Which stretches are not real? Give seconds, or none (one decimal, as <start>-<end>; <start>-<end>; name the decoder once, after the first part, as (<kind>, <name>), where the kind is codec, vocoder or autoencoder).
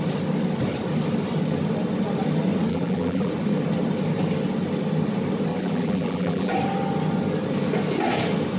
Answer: 2.7-3.3 (vocoder, BigVGAN v2); 5.5-6.5